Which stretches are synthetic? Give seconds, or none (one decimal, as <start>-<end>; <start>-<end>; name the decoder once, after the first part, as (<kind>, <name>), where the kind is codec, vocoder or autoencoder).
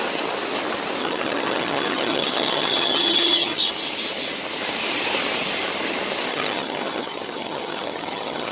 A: 1.0-3.7 (vocoder, HiFi-GAN); 6.3-8.5